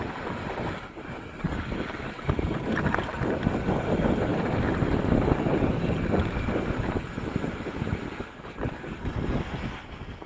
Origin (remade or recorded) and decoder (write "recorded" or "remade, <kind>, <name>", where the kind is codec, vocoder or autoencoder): recorded